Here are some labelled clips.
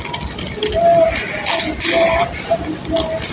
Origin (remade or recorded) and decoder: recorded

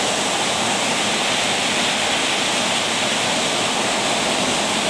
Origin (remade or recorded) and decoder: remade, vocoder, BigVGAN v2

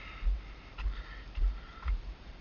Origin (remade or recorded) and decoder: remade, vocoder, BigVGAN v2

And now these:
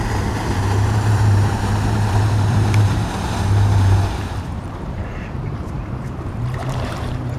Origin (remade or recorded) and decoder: remade, vocoder, BigVGAN v2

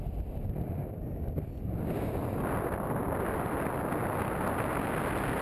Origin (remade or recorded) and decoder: recorded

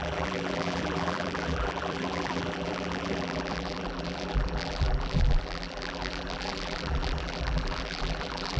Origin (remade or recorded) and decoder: remade, vocoder, BigVGAN v2